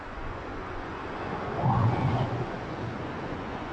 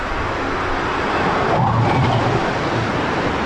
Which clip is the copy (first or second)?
first